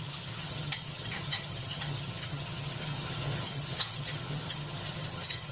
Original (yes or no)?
no